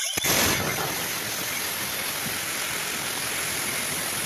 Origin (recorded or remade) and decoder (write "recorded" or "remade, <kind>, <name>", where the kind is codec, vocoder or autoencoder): recorded